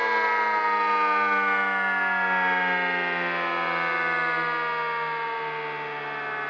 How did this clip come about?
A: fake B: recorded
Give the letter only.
B